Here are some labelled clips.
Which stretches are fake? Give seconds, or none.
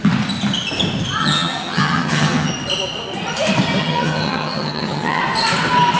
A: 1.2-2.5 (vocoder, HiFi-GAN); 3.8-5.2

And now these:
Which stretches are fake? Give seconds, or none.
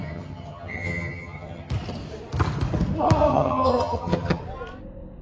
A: 0.0-1.7 (vocoder, HiFi-GAN); 3.3-4.4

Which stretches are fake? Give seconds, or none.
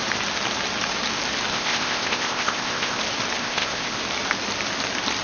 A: 1.5-3.0 (codec, ZipCodec); 3.4-4.0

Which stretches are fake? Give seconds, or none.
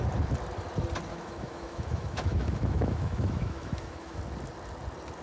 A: 1.1-4.2 (autoencoder, DAC-VAE)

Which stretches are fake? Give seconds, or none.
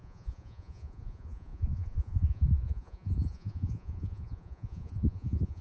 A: 0.0-5.6 (vocoder, Vocos)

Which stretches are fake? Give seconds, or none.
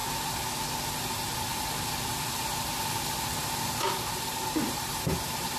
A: 3.4-5.6 (vocoder, BigVGAN v2)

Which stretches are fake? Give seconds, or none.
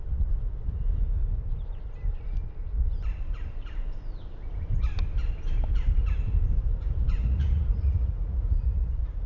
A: 7.2-8.9 (vocoder, Vocos)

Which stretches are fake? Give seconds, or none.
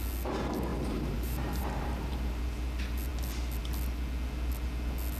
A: 0.7-2.4 (vocoder, BigVGAN v2)